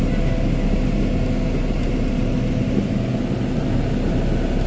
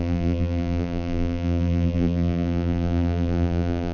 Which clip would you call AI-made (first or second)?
second